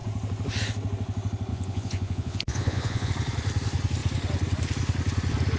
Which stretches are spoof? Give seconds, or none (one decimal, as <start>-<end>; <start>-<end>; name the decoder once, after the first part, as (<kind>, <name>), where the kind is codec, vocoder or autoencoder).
1.5-3.1 (vocoder, Vocos)